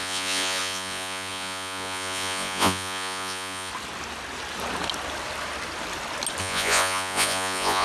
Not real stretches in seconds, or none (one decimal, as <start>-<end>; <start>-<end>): 0.0-3.7; 6.4-7.8